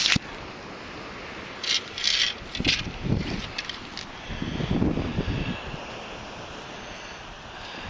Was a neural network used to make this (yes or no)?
no